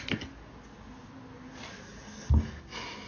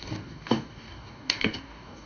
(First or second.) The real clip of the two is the first